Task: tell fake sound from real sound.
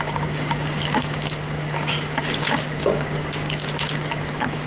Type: fake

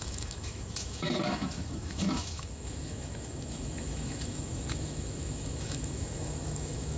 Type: fake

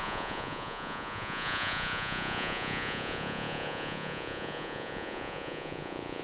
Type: fake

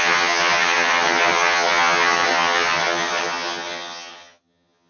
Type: fake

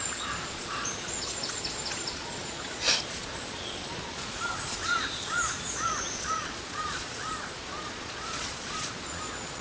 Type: fake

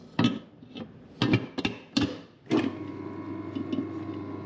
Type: real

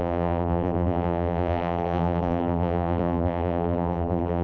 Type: fake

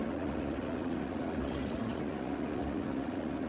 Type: fake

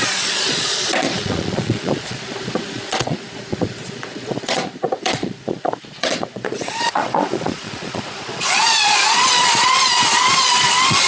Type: fake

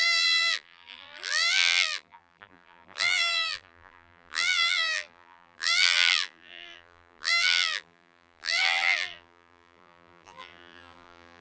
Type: fake